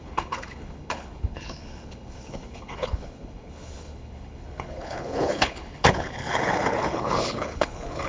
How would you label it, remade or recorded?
remade